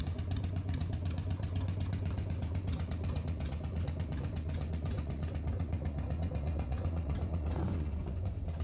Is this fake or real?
fake